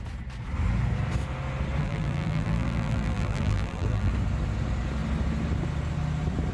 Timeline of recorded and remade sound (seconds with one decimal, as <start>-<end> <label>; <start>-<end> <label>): 0.0-1.8 recorded; 1.8-4.1 remade; 4.1-6.5 recorded

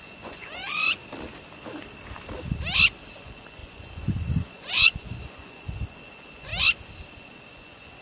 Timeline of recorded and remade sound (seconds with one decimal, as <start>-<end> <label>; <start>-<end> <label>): 0.0-1.0 remade; 1.0-3.2 recorded; 3.2-6.5 remade; 6.5-7.1 recorded; 7.1-8.0 remade